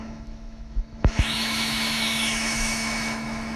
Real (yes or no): no